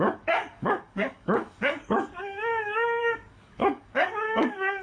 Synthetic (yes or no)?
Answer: yes